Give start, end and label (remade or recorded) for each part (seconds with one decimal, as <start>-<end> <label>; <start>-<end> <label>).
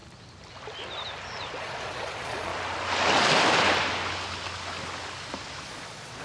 0.0-1.6 recorded; 1.6-2.5 remade; 2.5-5.6 recorded; 5.6-6.2 remade